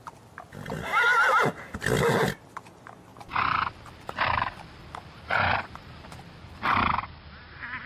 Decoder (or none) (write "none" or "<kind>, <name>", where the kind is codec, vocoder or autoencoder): none